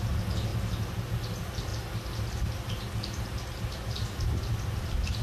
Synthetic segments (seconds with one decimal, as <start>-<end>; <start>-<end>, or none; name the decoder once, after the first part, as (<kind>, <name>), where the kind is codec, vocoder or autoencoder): none